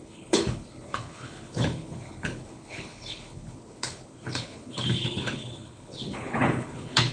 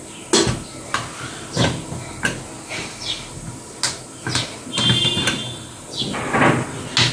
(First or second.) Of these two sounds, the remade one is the first